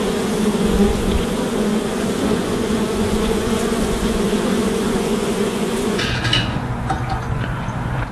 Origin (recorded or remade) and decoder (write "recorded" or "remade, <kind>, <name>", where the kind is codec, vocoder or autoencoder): remade, vocoder, Vocos